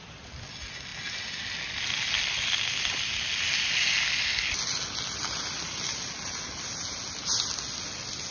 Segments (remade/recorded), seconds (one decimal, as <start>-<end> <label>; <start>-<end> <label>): 0.0-8.3 recorded